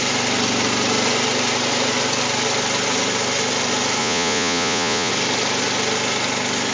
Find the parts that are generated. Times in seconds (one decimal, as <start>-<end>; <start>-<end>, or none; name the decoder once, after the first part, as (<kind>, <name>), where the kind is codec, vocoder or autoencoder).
4.0-5.1 (vocoder, Vocos)